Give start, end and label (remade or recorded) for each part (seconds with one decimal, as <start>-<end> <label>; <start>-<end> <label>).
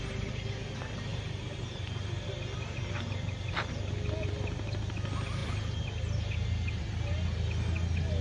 0.0-8.2 recorded